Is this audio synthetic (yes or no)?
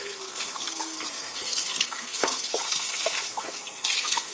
yes